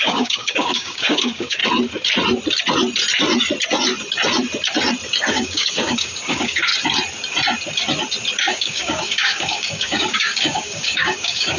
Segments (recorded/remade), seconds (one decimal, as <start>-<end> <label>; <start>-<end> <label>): 0.0-1.6 remade; 1.6-5.3 recorded; 5.3-6.7 remade; 6.7-8.4 recorded; 8.4-11.6 remade